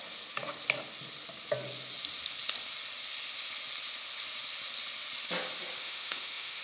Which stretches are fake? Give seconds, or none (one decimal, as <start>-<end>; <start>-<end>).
5.8-6.6